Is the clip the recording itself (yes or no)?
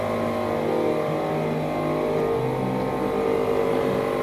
yes